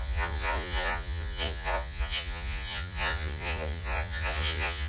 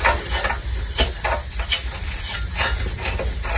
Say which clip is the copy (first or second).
first